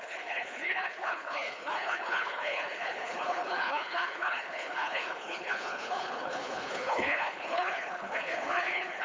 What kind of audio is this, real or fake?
fake